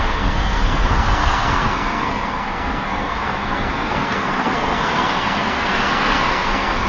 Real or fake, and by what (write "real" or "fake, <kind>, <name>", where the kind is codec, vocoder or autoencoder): fake, codec, SNAC